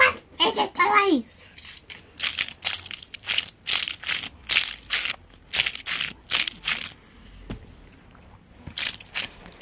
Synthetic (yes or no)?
no